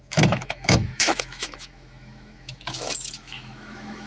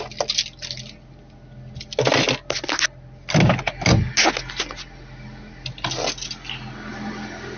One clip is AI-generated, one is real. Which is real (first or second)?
second